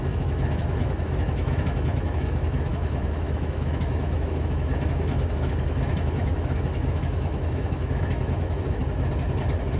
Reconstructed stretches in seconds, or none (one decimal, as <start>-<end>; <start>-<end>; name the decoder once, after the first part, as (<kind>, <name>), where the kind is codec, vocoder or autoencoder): 0.0-8.8 (autoencoder, DAC-VAE)